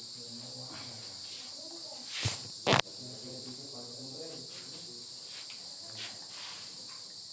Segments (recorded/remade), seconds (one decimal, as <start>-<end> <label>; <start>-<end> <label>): 0.0-7.3 recorded